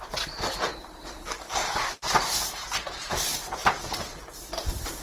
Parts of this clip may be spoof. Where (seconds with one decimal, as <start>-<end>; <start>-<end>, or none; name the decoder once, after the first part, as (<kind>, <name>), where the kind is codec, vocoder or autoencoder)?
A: none